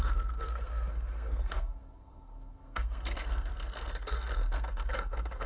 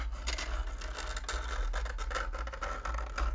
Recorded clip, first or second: second